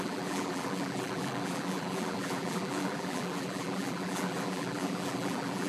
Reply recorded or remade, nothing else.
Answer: remade